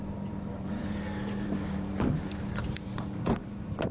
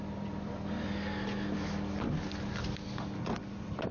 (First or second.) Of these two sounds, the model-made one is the first